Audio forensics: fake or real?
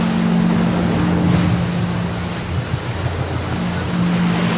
real